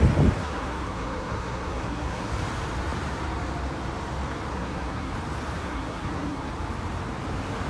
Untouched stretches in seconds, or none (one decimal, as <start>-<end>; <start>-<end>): 0.0-0.4; 2.3-4.5; 5.1-5.6; 6.5-7.7